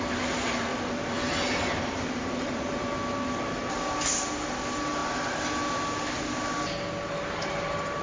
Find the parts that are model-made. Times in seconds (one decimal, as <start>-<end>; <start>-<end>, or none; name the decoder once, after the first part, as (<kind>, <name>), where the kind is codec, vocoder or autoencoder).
0.7-3.8 (vocoder, BigVGAN v2)